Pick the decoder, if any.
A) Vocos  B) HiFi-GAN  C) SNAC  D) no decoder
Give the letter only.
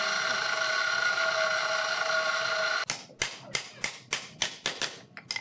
D